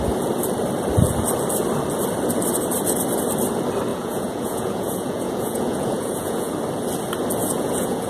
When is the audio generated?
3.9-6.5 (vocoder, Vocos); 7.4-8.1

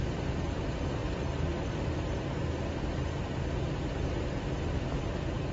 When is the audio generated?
none

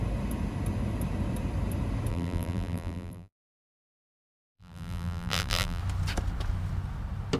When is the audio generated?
2.1-5.8 (vocoder, BigVGAN v2)